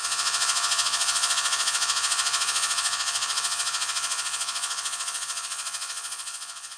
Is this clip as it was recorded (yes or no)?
no